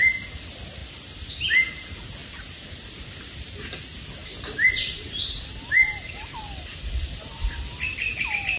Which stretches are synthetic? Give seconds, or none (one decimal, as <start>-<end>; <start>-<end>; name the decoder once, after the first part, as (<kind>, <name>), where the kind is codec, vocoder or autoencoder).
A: 4.2-8.6 (vocoder, BigVGAN v2)